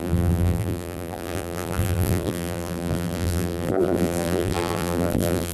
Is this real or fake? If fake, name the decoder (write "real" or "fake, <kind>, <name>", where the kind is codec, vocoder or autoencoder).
fake, vocoder, BigVGAN v2